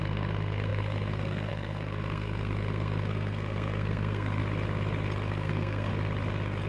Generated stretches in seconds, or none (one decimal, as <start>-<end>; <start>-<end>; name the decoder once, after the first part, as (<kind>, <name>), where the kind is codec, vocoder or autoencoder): 0.0-4.4 (codec, SNAC); 5.3-5.9